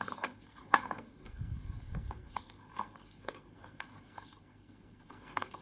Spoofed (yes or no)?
yes